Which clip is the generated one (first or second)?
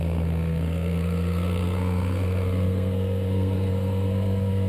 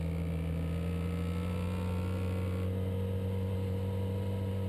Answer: first